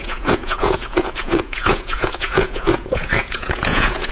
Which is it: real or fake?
fake